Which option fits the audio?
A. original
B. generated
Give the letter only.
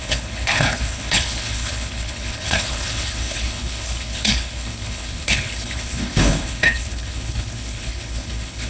B